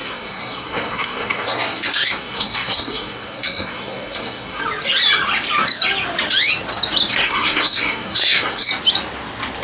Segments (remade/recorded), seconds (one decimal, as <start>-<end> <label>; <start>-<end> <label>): 0.0-4.6 remade; 4.6-7.1 recorded; 7.1-8.7 remade; 8.7-9.6 recorded